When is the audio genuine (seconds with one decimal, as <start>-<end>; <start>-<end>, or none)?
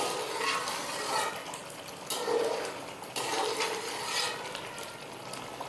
0.0-5.7